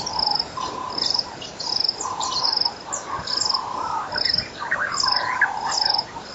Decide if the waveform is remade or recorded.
recorded